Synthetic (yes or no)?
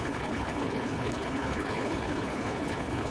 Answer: yes